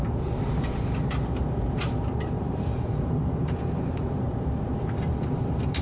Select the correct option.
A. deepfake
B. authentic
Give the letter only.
A